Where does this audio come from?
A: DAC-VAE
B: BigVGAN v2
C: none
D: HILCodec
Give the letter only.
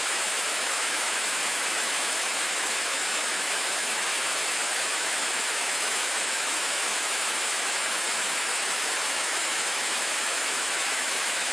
A